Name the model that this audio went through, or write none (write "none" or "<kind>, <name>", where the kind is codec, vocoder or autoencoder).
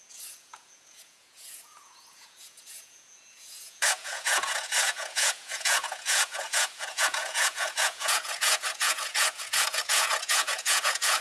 vocoder, Vocos